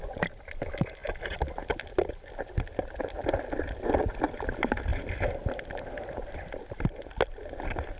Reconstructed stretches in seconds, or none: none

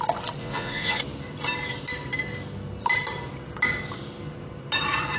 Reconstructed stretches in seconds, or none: 0.4-1.0 (vocoder, Vocos)

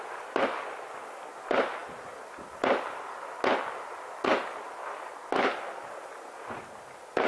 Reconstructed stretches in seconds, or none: none

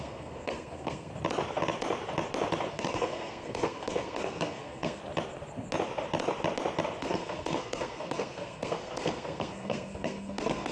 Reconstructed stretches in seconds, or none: 0.0-1.1 (codec, SNAC); 2.7-5.0; 7.0-10.7

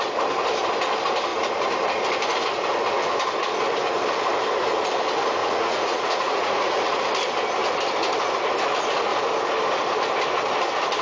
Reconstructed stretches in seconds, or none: 5.4-7.0 (vocoder, Vocos)

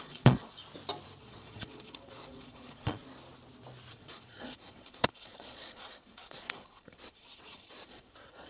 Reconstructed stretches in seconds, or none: 0.0-0.6 (vocoder, Vocos); 1.2-3.0; 3.9-8.5